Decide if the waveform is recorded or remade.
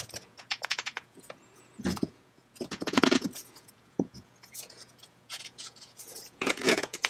remade